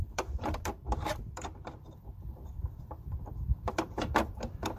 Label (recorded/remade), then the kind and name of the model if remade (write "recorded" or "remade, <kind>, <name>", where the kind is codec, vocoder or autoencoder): remade, vocoder, BigVGAN v2